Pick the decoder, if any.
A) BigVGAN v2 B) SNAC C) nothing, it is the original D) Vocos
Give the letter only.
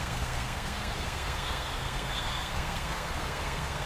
B